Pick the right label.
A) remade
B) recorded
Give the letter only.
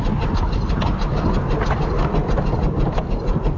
B